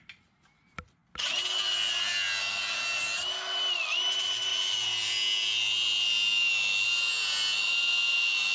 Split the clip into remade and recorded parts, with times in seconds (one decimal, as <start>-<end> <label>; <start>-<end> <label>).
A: 0.0-8.5 recorded